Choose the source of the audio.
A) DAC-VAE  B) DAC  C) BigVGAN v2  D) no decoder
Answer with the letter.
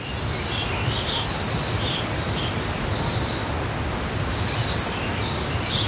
D